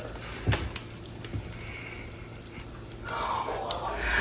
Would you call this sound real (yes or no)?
yes